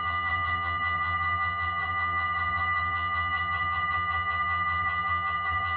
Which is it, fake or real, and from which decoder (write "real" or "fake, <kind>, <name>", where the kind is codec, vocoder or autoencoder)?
fake, vocoder, HiFi-GAN